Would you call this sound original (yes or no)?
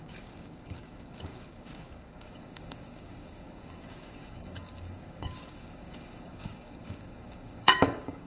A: no